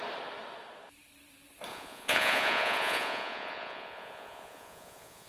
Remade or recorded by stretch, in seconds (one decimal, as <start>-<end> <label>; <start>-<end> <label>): 0.0-1.7 recorded; 1.7-5.3 remade